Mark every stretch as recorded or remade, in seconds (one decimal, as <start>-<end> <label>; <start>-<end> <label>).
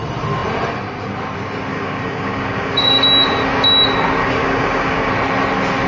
0.0-1.7 recorded; 1.7-3.0 remade; 3.0-4.2 recorded; 4.2-5.1 remade; 5.1-5.9 recorded